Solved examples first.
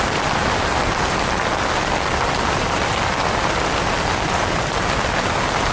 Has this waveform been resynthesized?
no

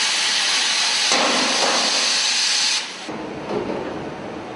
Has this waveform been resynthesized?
no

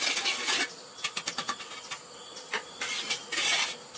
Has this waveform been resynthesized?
no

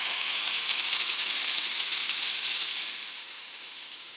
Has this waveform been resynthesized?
yes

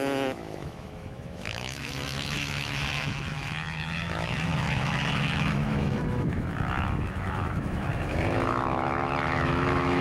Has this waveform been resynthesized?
yes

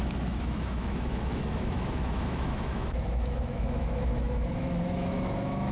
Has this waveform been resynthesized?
yes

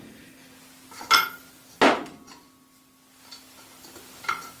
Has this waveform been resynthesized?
no